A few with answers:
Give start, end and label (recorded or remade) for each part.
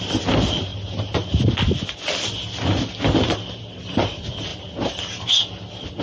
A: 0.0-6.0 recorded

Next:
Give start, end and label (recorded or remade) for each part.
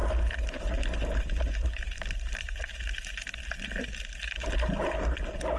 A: 0.0-3.4 remade; 3.4-5.6 recorded